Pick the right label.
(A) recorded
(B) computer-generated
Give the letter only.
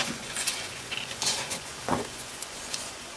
B